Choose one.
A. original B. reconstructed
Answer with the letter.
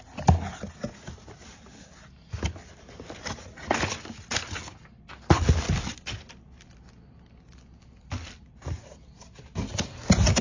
A